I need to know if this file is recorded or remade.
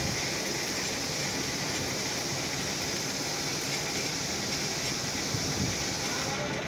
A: recorded